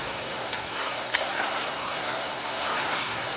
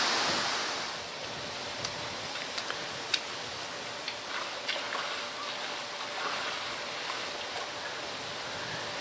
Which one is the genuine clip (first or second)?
second